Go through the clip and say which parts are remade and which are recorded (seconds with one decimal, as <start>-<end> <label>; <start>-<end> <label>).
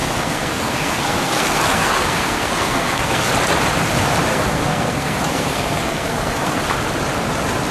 0.0-3.3 remade; 3.3-4.3 recorded; 4.3-6.6 remade; 6.6-7.7 recorded